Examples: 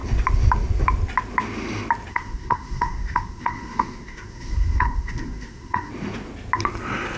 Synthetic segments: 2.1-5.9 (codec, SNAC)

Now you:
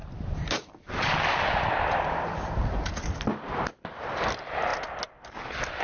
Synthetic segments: 0.0-3.5 (vocoder, BigVGAN v2)

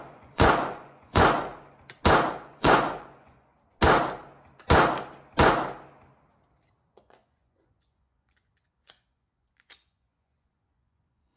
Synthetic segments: 0.0-1.5 (vocoder, Vocos); 2.3-3.5; 6.9-11.4

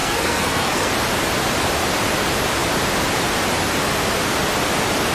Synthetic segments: 0.0-0.9 (codec, SNAC)